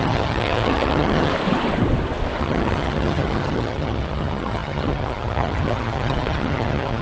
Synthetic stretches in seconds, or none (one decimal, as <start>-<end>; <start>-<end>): 0.0-1.3; 2.4-7.0